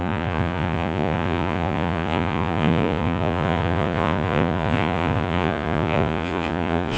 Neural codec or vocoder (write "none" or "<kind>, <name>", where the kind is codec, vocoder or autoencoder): vocoder, Vocos